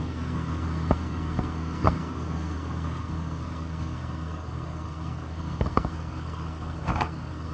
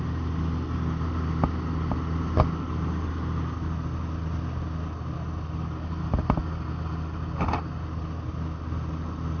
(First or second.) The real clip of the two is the second